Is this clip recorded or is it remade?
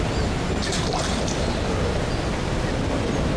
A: recorded